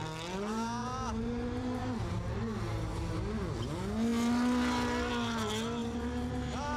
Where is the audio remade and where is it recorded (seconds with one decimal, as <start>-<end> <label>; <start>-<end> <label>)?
0.0-0.8 recorded; 0.8-2.4 remade; 2.4-5.8 recorded; 5.8-6.8 remade